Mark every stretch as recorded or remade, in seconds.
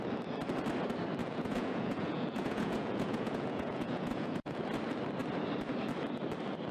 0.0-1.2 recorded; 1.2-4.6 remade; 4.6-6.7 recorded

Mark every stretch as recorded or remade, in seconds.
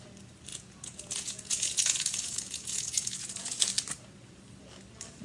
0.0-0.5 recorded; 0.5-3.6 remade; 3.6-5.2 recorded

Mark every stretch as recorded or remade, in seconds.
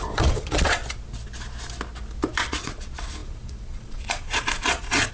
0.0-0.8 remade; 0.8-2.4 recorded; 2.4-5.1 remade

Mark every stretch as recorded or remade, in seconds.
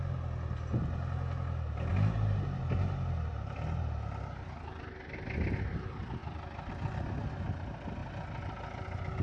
0.0-9.2 recorded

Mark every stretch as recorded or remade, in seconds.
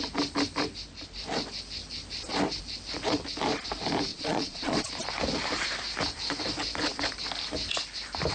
0.0-4.1 recorded; 4.1-4.8 remade; 4.8-8.3 recorded